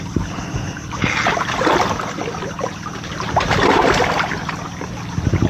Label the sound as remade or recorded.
recorded